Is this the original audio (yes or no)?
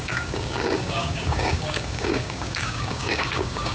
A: no